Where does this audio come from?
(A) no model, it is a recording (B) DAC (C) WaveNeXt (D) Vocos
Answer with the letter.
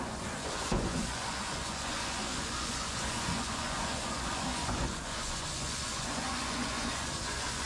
D